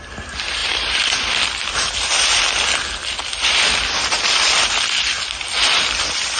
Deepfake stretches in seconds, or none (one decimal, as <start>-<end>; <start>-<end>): 0.6-1.9; 3.0-6.4